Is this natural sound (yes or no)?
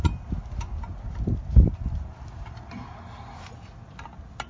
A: yes